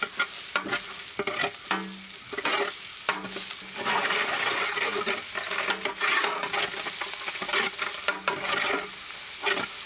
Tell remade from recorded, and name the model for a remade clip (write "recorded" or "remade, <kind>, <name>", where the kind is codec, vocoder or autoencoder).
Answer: recorded